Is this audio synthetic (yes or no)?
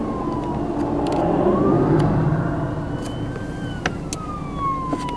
no